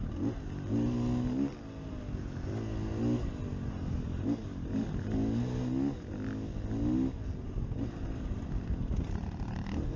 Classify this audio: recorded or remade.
recorded